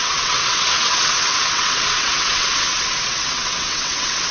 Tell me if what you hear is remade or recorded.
remade